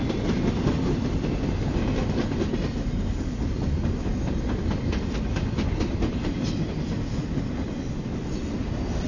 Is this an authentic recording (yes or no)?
yes